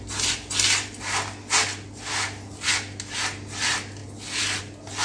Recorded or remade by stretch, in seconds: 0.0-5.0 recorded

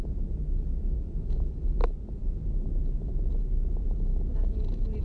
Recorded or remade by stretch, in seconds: 0.0-5.0 recorded

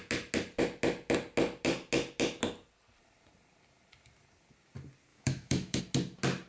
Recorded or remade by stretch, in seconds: 0.0-5.1 recorded; 5.1-5.8 remade; 5.8-6.5 recorded

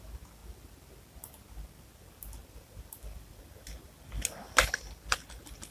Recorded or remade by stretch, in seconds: 0.0-2.4 recorded; 2.4-4.0 remade; 4.0-5.7 recorded

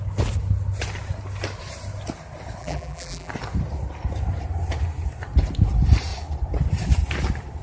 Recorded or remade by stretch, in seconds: 0.0-2.6 recorded; 2.6-3.3 remade; 3.3-7.6 recorded

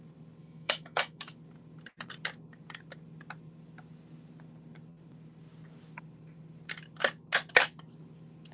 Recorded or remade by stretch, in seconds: 0.0-0.4 recorded; 0.4-1.3 remade; 1.3-8.5 recorded